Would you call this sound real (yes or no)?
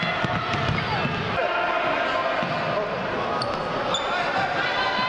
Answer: yes